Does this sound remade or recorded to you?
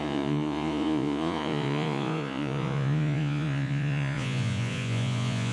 remade